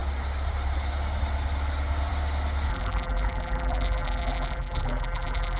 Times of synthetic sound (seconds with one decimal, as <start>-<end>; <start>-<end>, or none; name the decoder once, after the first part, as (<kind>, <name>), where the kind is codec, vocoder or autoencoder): 2.7-5.6 (vocoder, BigVGAN v2)